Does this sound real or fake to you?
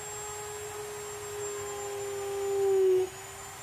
real